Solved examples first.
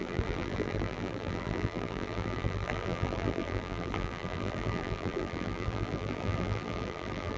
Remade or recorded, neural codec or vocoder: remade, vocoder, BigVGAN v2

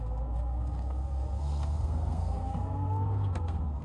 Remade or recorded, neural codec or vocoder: remade, codec, SNAC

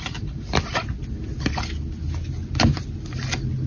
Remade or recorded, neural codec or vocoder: recorded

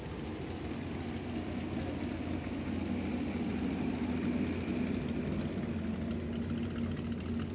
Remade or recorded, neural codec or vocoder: recorded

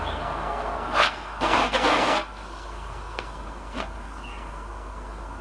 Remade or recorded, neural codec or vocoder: remade, codec, SNAC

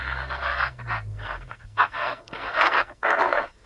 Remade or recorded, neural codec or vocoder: remade, codec, SNAC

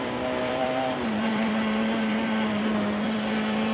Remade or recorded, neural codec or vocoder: remade, vocoder, BigVGAN v2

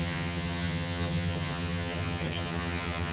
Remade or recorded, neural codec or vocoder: remade, vocoder, HiFi-GAN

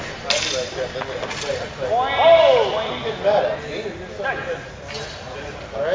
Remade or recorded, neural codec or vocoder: recorded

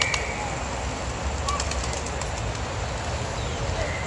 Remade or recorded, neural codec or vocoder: recorded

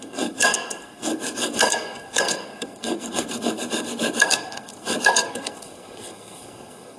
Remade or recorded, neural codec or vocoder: remade, codec, SNAC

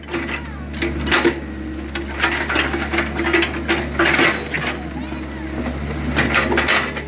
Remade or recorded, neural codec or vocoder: recorded